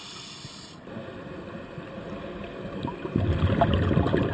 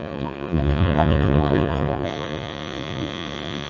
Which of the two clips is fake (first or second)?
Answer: second